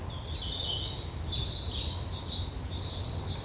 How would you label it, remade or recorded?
recorded